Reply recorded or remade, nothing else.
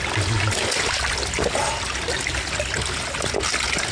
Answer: recorded